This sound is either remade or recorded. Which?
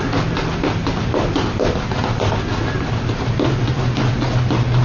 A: recorded